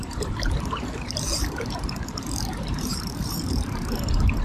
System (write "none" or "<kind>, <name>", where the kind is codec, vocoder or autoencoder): vocoder, BigVGAN v2